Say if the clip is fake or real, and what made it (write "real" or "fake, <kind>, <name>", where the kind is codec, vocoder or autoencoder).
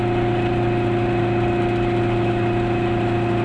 real